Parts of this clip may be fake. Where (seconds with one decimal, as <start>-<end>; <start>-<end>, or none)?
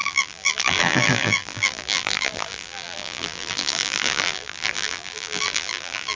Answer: 0.0-6.2